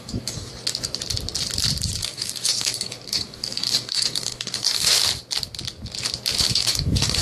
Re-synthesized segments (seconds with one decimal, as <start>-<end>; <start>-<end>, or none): 0.0-0.5; 2.0-5.0; 6.5-7.2